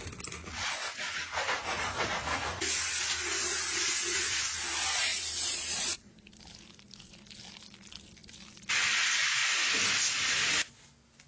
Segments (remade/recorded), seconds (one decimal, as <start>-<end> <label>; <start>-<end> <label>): 0.0-0.4 recorded; 0.4-2.6 remade; 2.6-11.3 recorded